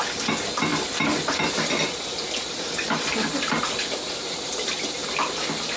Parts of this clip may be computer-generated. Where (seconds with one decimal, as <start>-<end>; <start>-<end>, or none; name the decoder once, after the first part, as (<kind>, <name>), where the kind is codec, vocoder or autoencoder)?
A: none